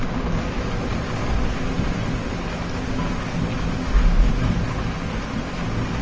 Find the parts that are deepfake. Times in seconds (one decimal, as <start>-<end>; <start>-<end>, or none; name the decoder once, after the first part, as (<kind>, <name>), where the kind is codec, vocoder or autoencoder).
none